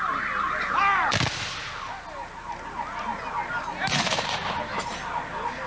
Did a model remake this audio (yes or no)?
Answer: no